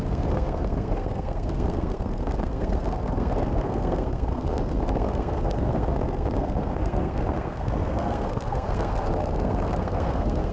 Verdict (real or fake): fake